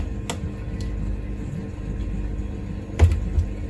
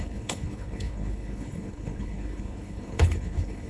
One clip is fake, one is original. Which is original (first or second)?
first